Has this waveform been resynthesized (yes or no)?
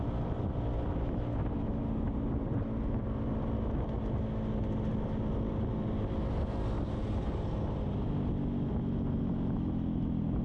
no